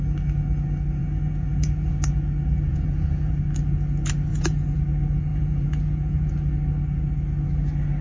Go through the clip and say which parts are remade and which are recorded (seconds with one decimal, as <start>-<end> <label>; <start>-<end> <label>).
0.0-1.0 recorded; 1.0-1.9 remade; 1.9-2.7 recorded; 2.7-3.4 remade; 3.4-4.3 recorded; 4.3-4.8 remade; 4.8-5.3 recorded; 5.3-6.3 remade; 6.3-8.0 recorded